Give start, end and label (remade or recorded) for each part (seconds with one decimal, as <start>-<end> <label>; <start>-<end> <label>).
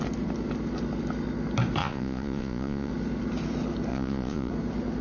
0.0-1.8 recorded; 1.8-2.9 remade; 2.9-3.9 recorded; 3.9-4.5 remade; 4.5-5.0 recorded